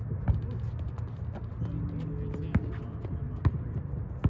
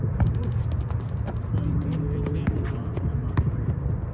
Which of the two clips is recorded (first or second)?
first